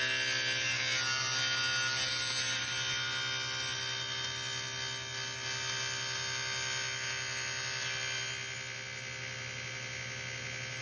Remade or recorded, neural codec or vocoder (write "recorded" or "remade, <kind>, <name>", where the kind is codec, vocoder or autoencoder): recorded